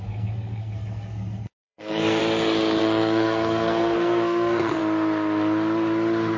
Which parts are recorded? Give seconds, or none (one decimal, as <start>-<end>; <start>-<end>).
2.2-2.8; 4.8-6.4